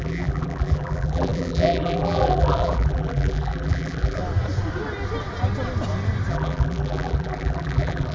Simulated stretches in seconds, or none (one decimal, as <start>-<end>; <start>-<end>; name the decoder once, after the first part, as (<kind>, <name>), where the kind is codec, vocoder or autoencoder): 0.0-4.2 (vocoder, BigVGAN v2); 6.3-8.1